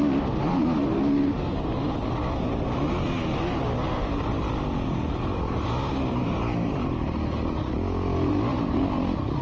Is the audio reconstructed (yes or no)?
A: no